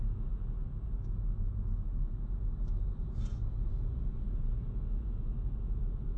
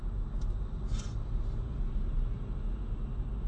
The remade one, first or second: first